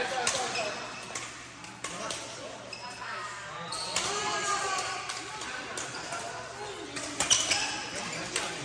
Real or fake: real